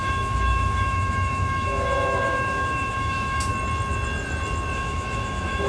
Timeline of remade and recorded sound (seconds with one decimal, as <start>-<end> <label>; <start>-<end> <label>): 0.0-3.5 remade; 3.5-4.7 recorded; 4.7-5.7 remade